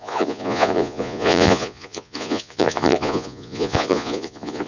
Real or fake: fake